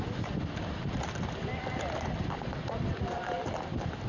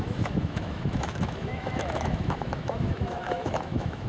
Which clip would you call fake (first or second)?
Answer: second